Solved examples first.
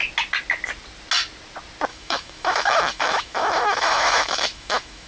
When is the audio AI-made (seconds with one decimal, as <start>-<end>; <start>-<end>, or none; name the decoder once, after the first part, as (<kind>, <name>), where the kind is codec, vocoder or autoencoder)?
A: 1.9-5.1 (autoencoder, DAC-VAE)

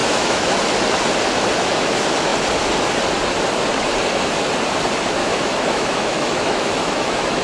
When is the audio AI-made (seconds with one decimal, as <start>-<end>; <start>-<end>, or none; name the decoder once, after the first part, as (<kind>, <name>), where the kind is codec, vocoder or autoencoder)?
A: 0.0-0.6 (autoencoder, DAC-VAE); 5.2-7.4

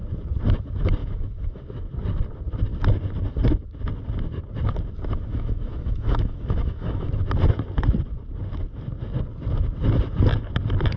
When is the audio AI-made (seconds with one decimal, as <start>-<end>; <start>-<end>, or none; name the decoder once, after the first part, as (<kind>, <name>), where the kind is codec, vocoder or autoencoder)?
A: 1.0-1.6 (autoencoder, DAC-VAE); 5.3-7.1